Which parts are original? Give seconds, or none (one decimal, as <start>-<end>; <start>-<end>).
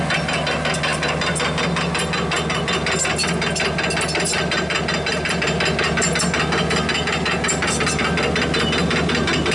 0.0-9.5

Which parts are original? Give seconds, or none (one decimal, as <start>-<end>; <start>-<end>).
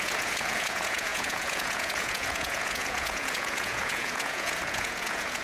none